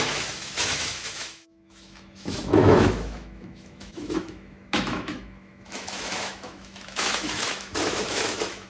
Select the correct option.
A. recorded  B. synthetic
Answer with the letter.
B